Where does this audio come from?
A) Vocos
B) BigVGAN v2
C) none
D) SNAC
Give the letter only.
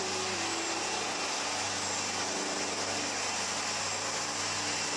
C